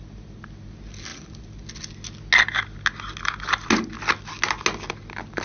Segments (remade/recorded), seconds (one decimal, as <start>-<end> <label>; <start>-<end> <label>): 0.0-5.4 recorded